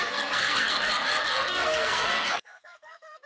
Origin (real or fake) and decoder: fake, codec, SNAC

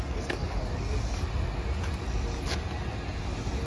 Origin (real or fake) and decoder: real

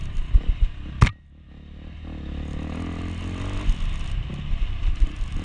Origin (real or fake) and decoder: real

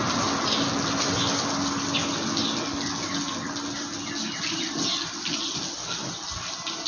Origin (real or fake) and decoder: real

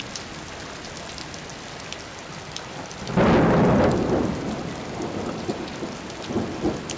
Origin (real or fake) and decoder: real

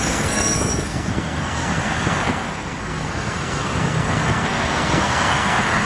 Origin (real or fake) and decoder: fake, codec, SNAC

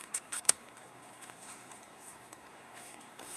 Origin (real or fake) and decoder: fake, codec, SNAC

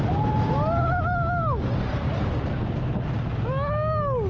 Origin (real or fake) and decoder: real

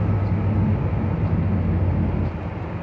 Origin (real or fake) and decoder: real